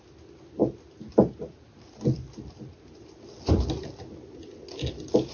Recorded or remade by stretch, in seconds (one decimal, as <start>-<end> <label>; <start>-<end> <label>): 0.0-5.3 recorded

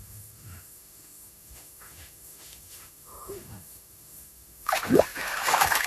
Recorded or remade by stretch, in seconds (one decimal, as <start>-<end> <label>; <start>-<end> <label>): 0.0-5.9 remade

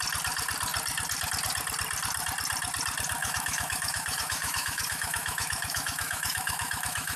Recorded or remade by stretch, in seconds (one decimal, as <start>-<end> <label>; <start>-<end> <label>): 0.0-3.2 recorded; 3.2-7.2 remade

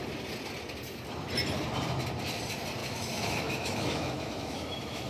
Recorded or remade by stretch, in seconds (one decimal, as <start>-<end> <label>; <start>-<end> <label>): 0.0-2.8 recorded; 2.8-5.1 remade

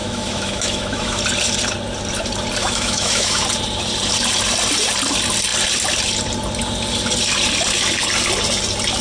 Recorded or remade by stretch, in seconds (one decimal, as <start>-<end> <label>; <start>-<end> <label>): 0.0-1.2 remade; 1.2-2.6 recorded; 2.6-3.4 remade; 3.4-9.0 recorded